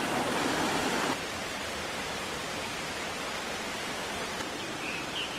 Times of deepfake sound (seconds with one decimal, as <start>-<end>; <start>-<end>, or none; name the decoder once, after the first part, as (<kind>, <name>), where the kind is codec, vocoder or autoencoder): 0.8-4.0 (vocoder, BigVGAN v2)